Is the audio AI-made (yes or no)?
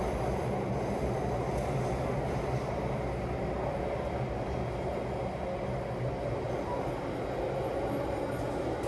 no